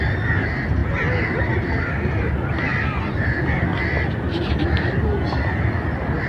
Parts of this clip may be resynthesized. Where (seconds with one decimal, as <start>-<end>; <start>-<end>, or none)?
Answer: 0.0-2.7; 5.4-6.3